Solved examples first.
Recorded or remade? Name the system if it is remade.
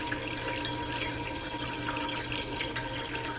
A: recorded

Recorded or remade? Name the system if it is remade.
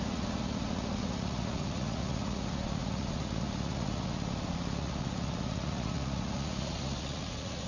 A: remade, vocoder, Vocos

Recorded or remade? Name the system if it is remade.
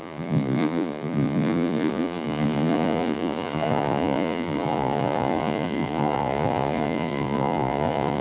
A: remade, vocoder, Vocos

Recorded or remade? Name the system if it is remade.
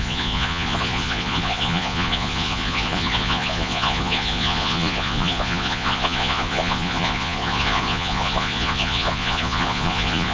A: remade, vocoder, Vocos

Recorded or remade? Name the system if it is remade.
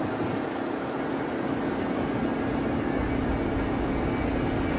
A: recorded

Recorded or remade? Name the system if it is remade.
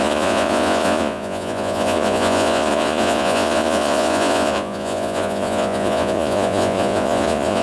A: remade, vocoder, Vocos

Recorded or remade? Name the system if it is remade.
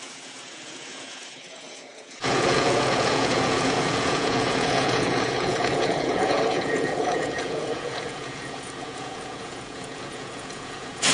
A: remade, vocoder, Vocos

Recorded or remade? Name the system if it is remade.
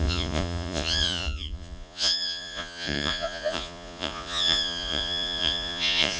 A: remade, vocoder, Vocos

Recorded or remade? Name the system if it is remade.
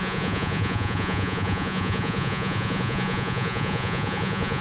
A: remade, vocoder, Vocos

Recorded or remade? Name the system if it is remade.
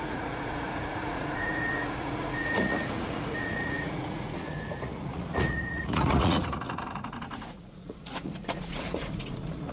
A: remade, vocoder, Vocos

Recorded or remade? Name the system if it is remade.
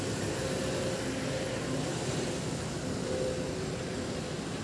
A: recorded